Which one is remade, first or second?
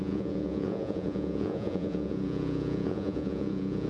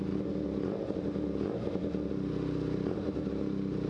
first